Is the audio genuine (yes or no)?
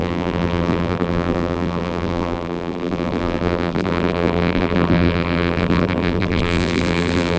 no